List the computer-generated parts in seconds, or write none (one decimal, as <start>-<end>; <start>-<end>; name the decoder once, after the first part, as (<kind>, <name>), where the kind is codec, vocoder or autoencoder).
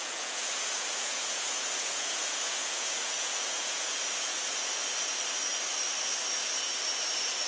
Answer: 0.0-4.8 (vocoder, Vocos)